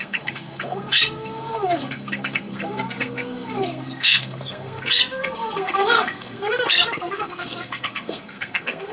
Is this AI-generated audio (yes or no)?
yes